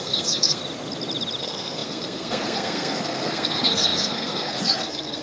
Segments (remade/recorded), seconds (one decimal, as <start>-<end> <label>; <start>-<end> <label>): 0.0-0.6 remade; 0.6-1.4 recorded; 1.4-5.2 remade